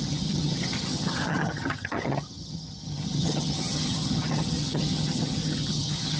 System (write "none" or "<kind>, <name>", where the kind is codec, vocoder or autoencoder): vocoder, HiFi-GAN